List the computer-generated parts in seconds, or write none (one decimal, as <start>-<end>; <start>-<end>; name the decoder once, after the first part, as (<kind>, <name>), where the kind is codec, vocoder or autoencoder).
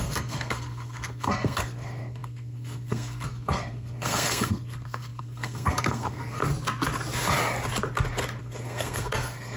0.0-6.4 (codec, SNAC); 8.4-9.6